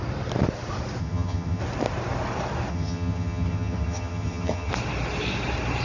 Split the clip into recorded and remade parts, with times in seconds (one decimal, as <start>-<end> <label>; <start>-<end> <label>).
0.0-1.0 recorded; 1.0-1.6 remade; 1.6-2.7 recorded; 2.7-4.7 remade; 4.7-5.8 recorded